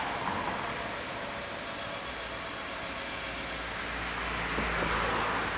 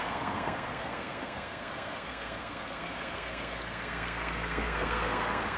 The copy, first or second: second